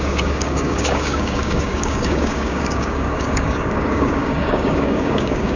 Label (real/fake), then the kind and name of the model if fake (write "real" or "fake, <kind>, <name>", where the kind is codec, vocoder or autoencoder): fake, codec, DAC